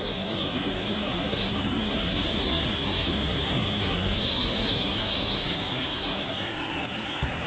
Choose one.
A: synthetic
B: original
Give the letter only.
A